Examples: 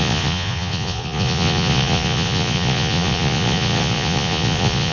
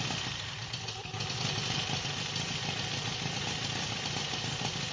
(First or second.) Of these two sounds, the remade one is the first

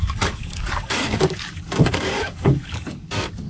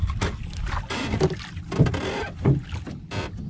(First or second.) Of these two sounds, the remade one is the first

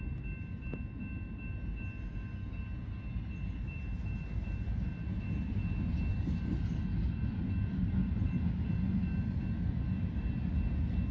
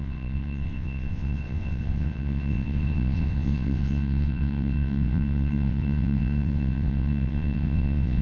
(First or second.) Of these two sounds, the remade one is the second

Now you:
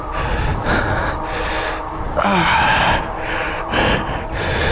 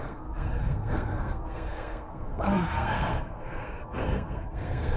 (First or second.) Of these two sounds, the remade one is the second